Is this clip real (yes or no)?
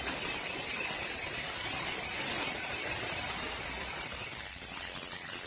no